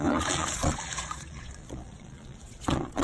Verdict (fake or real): fake